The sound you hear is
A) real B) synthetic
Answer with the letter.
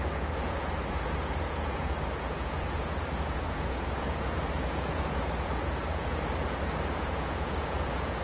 B